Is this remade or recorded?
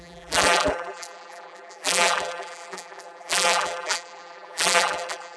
remade